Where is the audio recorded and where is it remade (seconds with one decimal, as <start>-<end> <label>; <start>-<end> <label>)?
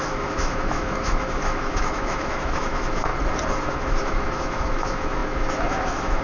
0.0-3.1 remade; 3.1-3.6 recorded; 3.6-6.2 remade